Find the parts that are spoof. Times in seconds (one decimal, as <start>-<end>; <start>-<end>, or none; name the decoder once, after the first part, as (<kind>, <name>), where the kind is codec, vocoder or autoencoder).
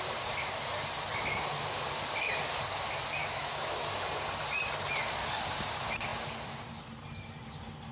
3.2-3.9 (autoencoder, DAC-VAE)